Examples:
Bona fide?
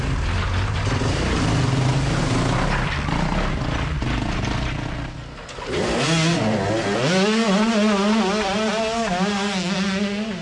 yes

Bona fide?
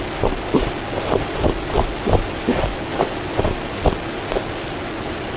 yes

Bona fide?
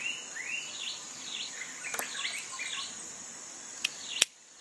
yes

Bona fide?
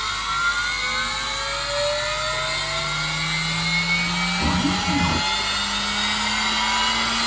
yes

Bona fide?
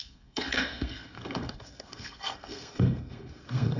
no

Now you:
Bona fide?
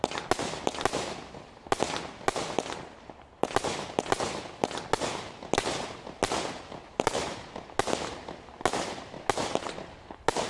yes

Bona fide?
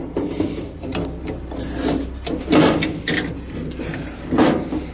yes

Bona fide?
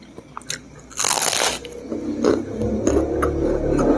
yes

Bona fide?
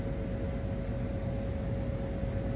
yes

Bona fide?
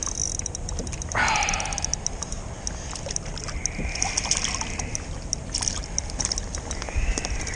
yes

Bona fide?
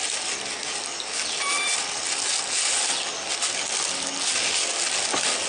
yes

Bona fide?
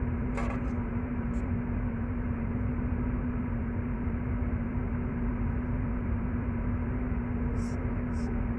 no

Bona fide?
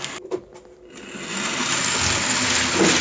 yes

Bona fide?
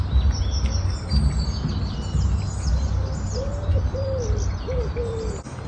yes